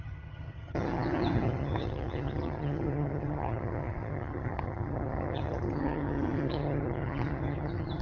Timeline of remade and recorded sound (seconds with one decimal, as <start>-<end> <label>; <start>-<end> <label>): 0.0-8.0 remade